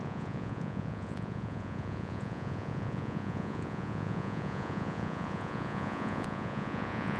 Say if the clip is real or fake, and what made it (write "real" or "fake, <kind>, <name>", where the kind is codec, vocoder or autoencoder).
fake, vocoder, Vocos